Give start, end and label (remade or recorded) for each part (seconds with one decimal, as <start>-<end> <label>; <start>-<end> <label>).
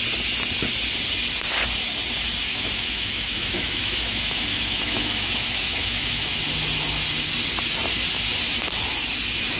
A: 0.0-2.5 recorded; 2.5-6.4 remade; 6.4-9.6 recorded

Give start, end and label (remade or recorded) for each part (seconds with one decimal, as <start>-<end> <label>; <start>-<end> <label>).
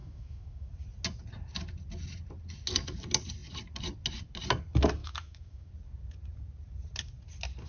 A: 0.0-0.7 remade; 0.7-5.0 recorded; 5.0-5.7 remade; 5.7-7.7 recorded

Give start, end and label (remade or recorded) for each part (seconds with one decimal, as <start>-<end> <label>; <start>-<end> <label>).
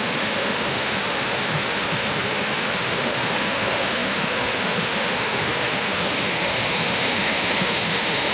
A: 0.0-8.3 remade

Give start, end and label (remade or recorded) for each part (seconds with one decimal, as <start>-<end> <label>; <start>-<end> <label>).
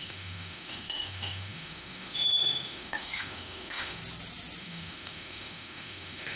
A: 0.0-4.0 remade; 4.0-4.6 recorded; 4.6-6.4 remade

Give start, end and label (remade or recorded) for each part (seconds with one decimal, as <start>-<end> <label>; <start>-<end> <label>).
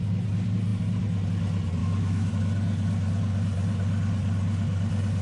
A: 0.0-1.8 recorded; 1.8-2.3 remade; 2.3-5.2 recorded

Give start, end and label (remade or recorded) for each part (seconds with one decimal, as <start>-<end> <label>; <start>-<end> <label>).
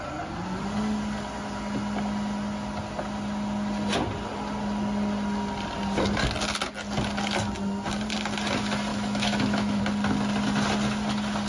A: 0.0-8.9 recorded; 8.9-9.8 remade; 9.8-11.5 recorded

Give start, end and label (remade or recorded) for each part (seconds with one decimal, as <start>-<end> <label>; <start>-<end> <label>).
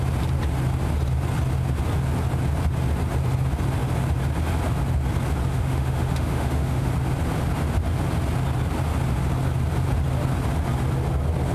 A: 0.0-5.5 recorded; 5.5-6.9 remade; 6.9-11.5 recorded